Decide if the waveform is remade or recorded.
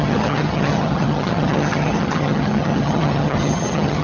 remade